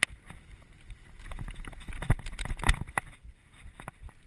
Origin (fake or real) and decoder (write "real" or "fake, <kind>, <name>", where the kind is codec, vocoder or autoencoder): real